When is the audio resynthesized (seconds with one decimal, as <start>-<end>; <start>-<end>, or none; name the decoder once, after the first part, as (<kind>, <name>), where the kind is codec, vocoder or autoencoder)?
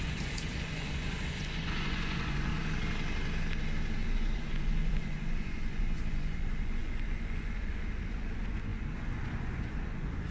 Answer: 0.0-2.5 (vocoder, Vocos); 4.1-10.3